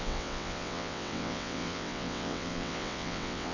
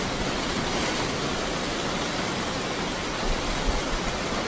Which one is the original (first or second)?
second